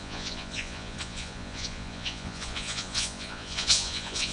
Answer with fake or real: fake